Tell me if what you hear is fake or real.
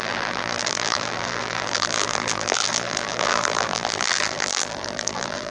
fake